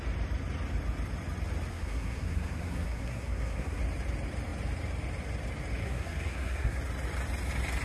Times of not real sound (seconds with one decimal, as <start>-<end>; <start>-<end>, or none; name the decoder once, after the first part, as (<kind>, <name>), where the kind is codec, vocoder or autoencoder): 1.7-3.8 (codec, SNAC); 5.8-6.8